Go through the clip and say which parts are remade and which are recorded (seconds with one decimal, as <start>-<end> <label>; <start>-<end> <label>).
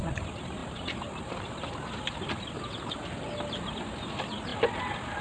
0.0-5.2 recorded